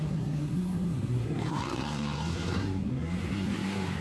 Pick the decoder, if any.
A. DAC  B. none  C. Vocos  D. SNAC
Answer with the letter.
D